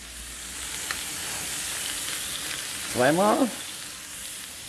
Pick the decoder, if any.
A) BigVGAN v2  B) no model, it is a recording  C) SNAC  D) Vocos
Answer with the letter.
B